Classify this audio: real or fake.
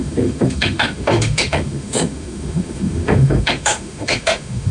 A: fake